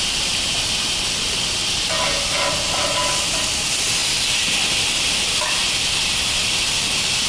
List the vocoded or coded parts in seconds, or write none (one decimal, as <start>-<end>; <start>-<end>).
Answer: none